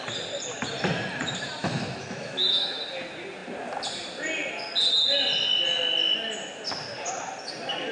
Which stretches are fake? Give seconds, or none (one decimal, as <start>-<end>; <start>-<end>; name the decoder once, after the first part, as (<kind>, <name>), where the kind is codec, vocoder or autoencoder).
1.6-2.8 (autoencoder, DAC-VAE)